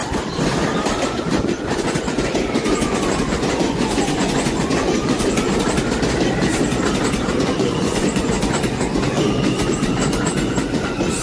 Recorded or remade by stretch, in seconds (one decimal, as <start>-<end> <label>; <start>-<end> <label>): 0.0-1.1 recorded; 1.1-5.5 remade; 5.5-7.3 recorded; 7.3-11.2 remade